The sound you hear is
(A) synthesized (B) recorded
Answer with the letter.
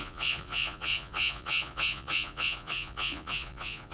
A